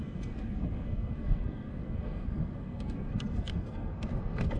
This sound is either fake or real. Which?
fake